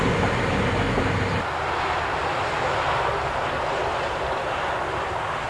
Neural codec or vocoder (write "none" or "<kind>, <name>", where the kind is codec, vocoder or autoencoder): none